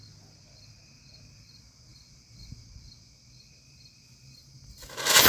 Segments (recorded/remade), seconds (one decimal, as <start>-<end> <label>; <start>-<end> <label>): 0.0-5.3 recorded